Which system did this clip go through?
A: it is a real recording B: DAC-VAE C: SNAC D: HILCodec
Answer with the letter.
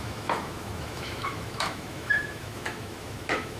B